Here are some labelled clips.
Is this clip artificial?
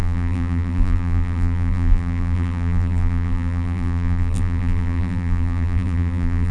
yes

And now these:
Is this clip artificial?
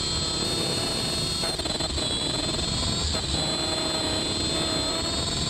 no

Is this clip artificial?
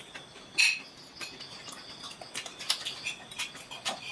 no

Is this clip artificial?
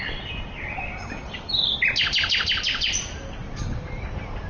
no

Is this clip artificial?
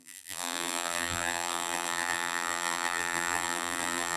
yes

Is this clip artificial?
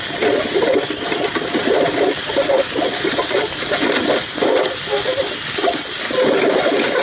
no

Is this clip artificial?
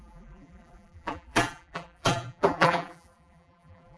yes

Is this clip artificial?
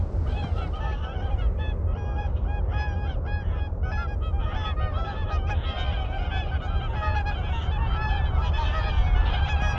no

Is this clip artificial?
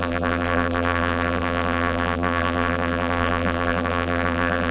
yes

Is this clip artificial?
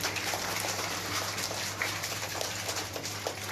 yes